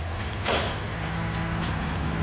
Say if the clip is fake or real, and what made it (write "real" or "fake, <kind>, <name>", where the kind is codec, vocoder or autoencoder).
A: real